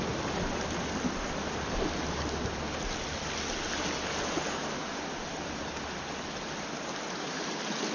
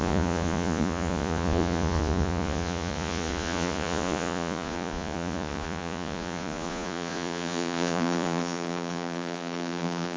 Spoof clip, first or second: second